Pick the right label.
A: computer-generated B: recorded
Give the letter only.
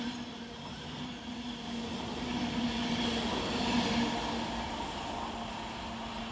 B